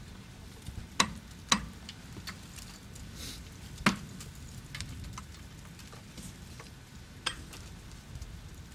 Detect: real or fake real